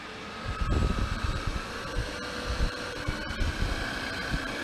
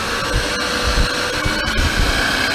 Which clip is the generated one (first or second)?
first